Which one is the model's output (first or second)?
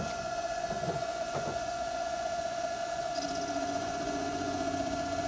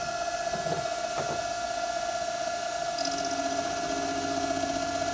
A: first